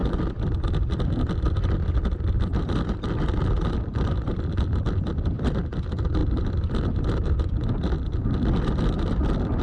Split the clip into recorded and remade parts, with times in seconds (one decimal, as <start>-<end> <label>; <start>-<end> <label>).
0.0-9.6 remade